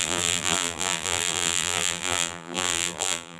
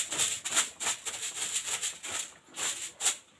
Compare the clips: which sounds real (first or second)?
second